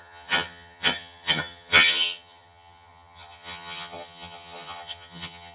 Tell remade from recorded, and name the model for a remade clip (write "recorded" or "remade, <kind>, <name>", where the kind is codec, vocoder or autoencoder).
remade, vocoder, HiFi-GAN